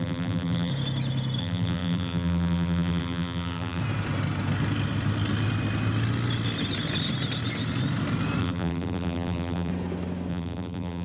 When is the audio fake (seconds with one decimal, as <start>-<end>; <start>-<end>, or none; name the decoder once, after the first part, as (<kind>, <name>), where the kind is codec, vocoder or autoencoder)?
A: 0.0-0.7 (vocoder, BigVGAN v2); 1.4-3.8; 8.4-9.7; 10.3-11.0

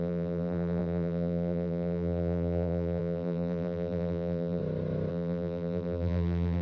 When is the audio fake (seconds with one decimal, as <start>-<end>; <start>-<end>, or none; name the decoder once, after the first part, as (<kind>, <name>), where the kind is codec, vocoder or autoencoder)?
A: 0.0-4.6 (vocoder, BigVGAN v2); 5.1-6.6

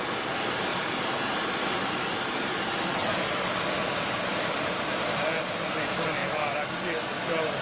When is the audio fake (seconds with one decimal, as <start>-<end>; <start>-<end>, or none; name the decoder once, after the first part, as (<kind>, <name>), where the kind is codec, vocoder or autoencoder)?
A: 0.7-2.5 (vocoder, BigVGAN v2)

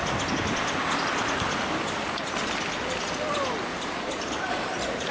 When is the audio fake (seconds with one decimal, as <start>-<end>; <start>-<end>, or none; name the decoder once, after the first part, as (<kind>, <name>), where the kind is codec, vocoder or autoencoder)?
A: 3.7-5.1 (vocoder, BigVGAN v2)

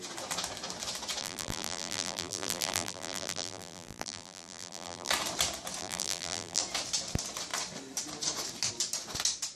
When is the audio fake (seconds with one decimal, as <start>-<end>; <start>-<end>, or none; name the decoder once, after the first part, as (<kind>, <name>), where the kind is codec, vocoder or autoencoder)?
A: 1.2-5.1 (vocoder, BigVGAN v2); 5.8-6.6

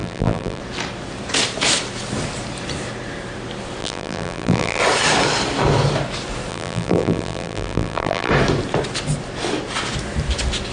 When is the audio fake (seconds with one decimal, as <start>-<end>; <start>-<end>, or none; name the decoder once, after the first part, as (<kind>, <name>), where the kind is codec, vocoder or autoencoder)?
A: 0.0-0.6 (vocoder, BigVGAN v2); 3.8-4.8; 6.5-8.3

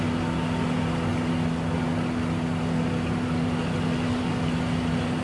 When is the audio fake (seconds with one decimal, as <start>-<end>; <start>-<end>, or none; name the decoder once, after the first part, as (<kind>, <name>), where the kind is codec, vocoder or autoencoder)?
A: none